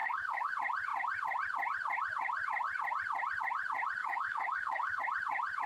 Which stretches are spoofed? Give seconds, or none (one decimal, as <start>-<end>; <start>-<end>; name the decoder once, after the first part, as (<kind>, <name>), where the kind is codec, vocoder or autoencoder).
0.0-0.5 (codec, DAC); 4.0-5.0